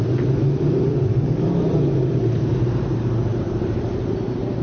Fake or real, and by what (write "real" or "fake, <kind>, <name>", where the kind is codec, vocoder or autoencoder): real